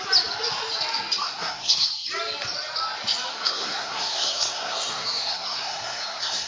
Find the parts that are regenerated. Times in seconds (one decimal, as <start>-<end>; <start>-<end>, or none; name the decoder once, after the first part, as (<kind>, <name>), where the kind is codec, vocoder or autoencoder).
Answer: 1.2-1.9 (codec, SNAC); 3.3-6.5